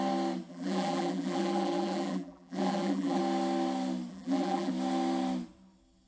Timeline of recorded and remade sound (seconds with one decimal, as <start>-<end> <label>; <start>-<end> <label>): 0.0-0.5 recorded; 0.5-3.2 remade; 3.2-4.1 recorded; 4.1-4.7 remade; 4.7-6.1 recorded